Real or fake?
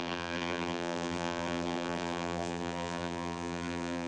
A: fake